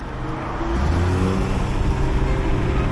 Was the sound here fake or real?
real